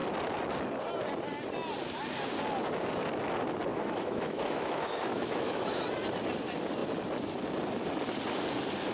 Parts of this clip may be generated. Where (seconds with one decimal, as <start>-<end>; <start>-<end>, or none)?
3.7-5.8